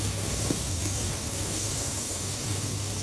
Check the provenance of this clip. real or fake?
fake